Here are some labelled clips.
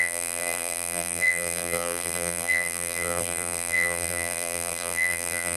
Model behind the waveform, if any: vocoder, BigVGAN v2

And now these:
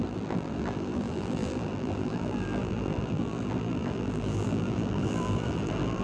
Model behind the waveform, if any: vocoder, BigVGAN v2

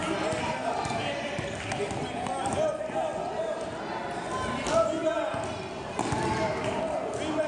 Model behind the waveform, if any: none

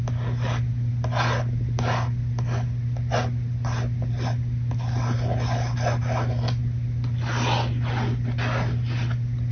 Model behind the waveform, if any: none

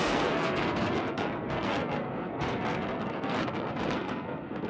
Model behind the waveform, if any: codec, SNAC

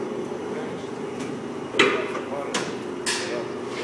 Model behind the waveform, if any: none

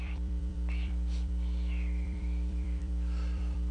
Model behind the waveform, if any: vocoder, BigVGAN v2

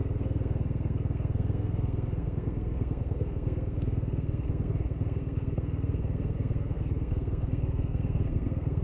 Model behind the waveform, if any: codec, SNAC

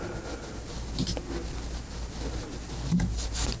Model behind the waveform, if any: none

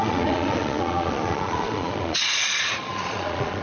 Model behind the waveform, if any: vocoder, Vocos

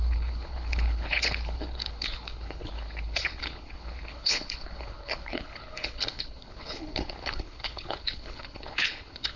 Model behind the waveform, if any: codec, HILCodec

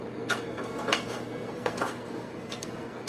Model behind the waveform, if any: codec, SNAC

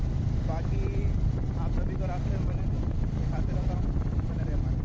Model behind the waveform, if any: none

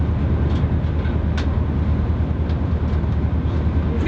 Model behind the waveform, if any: none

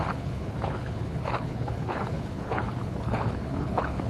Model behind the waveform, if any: codec, HILCodec